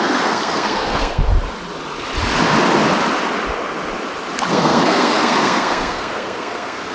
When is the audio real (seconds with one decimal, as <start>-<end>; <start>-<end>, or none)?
1.2-4.5